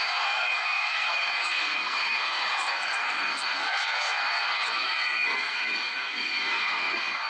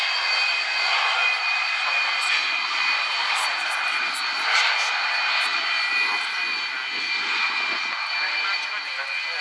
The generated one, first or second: first